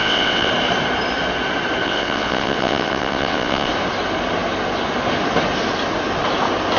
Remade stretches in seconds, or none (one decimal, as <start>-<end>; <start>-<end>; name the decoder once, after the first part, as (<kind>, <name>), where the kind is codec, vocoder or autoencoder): 0.0-0.5 (vocoder, WaveNeXt); 1.8-3.7